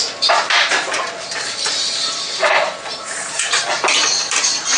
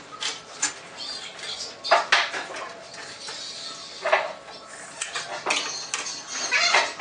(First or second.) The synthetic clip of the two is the first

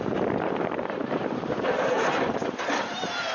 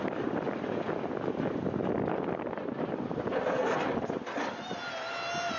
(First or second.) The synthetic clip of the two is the first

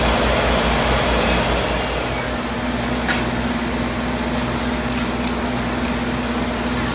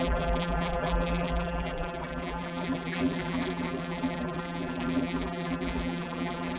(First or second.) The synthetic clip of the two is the second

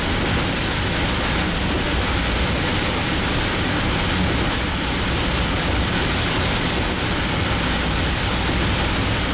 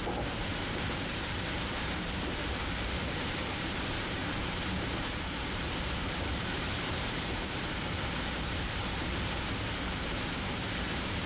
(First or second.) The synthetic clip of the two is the second